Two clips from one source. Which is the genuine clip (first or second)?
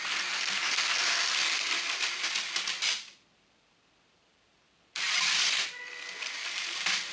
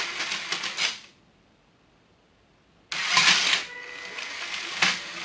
second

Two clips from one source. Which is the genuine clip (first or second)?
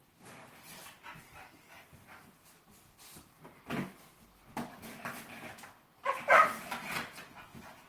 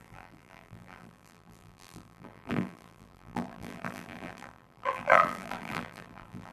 first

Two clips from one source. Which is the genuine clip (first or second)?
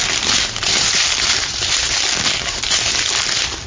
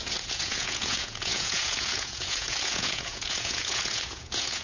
first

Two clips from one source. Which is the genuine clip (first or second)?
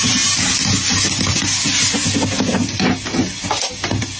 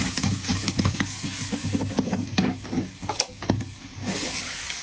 first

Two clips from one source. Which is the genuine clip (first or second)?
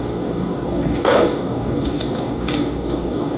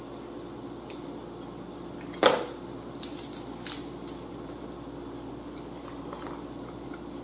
second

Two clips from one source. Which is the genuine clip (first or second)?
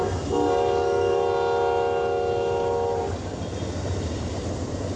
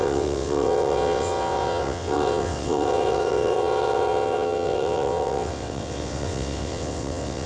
first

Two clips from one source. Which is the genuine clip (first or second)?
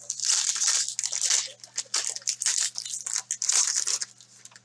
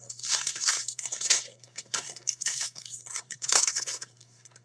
first